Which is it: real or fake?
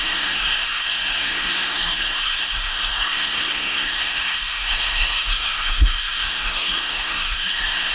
fake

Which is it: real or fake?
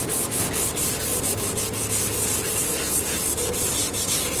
real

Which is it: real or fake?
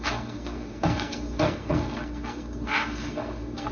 fake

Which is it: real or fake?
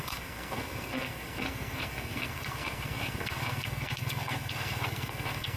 fake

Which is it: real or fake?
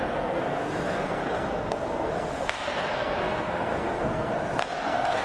fake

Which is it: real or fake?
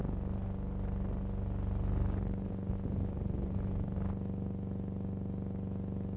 real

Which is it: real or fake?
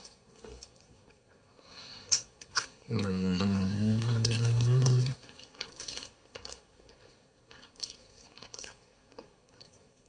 fake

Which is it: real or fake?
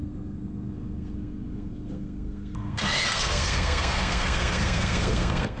fake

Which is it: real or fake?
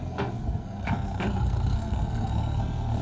fake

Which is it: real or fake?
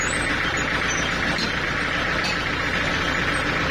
real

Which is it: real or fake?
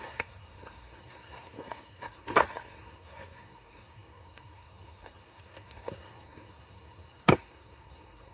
fake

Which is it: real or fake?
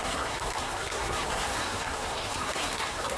fake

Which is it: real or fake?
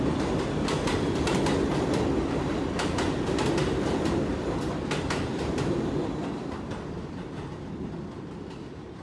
real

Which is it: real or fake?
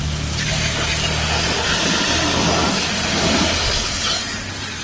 real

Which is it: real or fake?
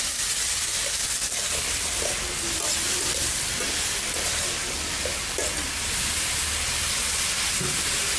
real